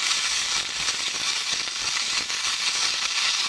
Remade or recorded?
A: remade